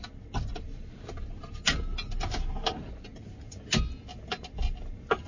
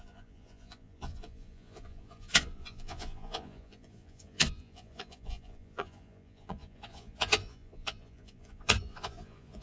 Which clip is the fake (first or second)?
second